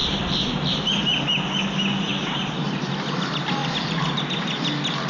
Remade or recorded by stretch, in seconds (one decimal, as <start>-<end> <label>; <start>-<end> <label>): 0.0-1.0 remade; 1.0-2.1 recorded; 2.1-2.9 remade; 2.9-3.6 recorded; 3.6-4.2 remade; 4.2-5.1 recorded